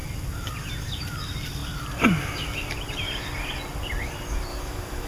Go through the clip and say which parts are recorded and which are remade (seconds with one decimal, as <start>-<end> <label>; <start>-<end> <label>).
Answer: 0.0-4.5 recorded; 4.5-5.1 remade